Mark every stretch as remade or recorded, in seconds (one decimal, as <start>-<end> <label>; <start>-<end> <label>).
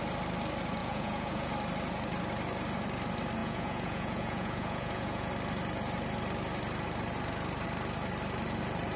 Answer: 0.0-0.8 recorded; 0.8-1.5 remade; 1.5-3.4 recorded; 3.4-5.3 remade; 5.3-9.0 recorded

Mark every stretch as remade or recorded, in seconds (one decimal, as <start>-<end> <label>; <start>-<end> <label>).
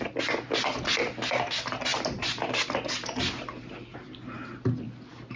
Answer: 0.0-5.4 recorded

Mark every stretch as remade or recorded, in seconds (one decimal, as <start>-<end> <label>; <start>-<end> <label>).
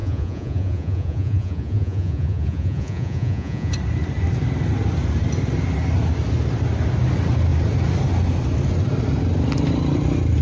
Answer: 0.0-3.7 remade; 3.7-10.4 recorded